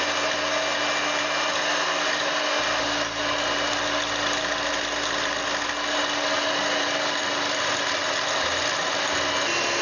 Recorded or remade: recorded